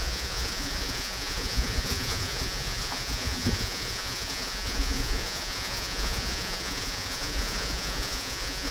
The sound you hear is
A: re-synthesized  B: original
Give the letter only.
A